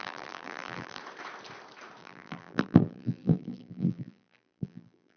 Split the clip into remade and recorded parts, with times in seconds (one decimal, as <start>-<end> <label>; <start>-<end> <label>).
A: 0.0-1.0 remade; 1.0-2.0 recorded; 2.0-5.2 remade